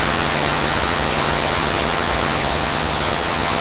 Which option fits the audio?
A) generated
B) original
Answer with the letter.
A